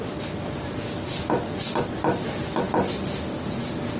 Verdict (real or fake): real